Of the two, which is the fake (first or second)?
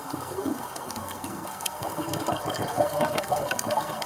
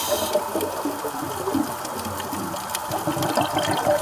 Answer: first